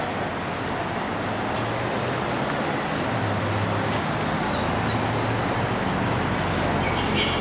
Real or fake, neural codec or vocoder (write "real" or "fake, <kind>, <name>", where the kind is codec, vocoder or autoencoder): real